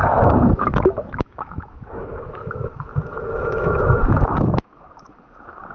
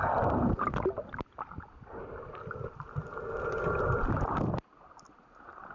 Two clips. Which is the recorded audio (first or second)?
second